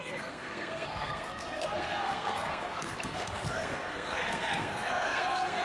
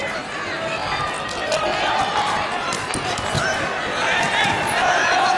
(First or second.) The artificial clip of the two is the first